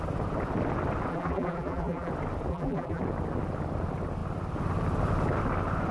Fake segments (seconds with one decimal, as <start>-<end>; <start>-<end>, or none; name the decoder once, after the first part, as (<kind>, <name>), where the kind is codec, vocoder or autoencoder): 1.1-2.1 (vocoder, BigVGAN v2); 2.5-3.0